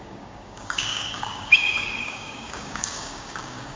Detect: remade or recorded remade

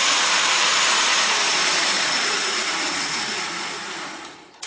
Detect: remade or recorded remade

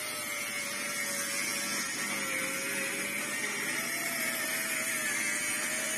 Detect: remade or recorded recorded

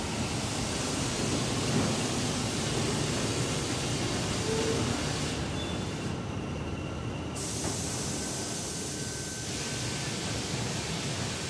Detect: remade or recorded recorded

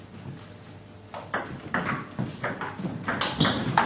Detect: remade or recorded recorded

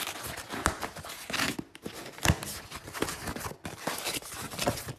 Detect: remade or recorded recorded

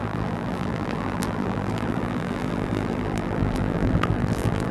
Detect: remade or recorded remade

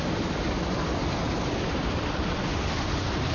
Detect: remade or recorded recorded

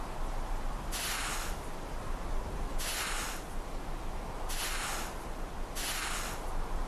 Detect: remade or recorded recorded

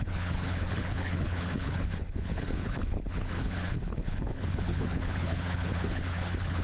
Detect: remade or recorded remade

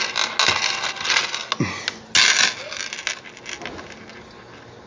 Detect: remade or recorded recorded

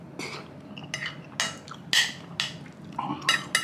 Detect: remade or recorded recorded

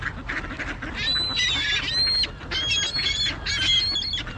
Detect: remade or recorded recorded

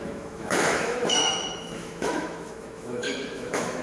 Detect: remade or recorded remade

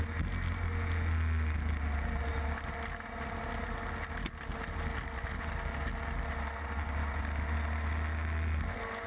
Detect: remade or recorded recorded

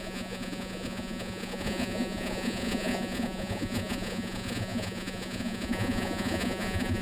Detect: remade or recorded remade